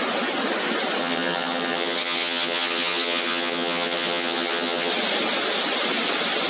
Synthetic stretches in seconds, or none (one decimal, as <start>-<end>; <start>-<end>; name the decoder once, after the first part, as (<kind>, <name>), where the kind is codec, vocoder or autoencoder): 1.0-4.9 (vocoder, HiFi-GAN)